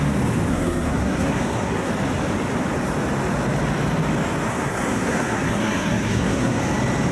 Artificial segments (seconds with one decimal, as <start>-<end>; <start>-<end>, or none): 0.5-1.9; 4.5-6.6